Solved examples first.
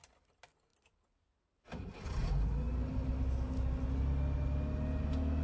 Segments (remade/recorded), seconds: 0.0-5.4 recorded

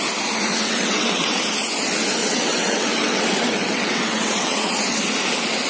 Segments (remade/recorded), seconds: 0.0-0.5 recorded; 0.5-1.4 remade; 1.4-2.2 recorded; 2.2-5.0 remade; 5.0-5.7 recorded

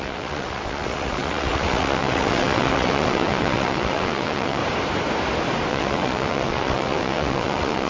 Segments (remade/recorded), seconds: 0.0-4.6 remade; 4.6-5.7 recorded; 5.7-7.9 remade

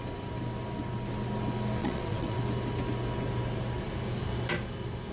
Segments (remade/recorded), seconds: 0.0-1.8 recorded; 1.8-2.4 remade; 2.4-5.1 recorded